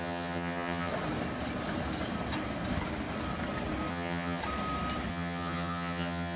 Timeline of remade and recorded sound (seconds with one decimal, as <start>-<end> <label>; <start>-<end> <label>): 0.0-0.9 remade; 0.9-3.9 recorded; 3.9-4.4 remade; 4.4-5.1 recorded; 5.1-6.4 remade